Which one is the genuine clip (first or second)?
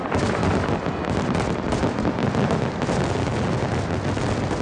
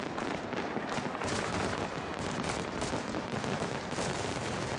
first